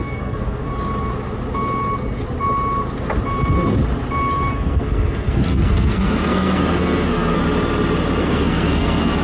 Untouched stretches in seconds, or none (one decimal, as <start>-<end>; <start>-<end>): 0.7-4.5; 7.4-8.2